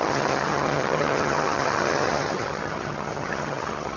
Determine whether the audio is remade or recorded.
remade